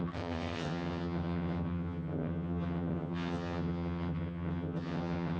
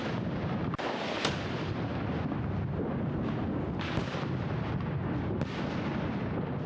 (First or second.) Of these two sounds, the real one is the second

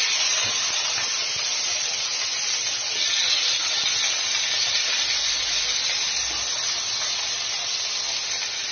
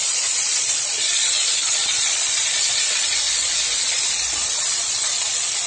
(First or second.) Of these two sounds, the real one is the first